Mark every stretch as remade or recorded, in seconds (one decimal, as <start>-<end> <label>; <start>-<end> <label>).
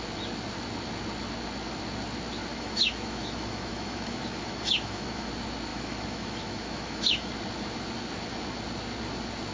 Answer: 0.0-2.5 recorded; 2.5-5.3 remade; 5.3-5.7 recorded; 5.7-7.3 remade; 7.3-9.5 recorded